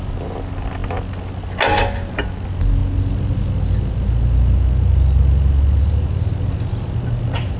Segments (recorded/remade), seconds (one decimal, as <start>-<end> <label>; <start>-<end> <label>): 0.0-7.6 recorded